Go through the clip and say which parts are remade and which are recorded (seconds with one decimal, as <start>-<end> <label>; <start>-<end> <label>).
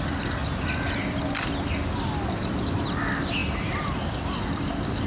0.0-5.1 recorded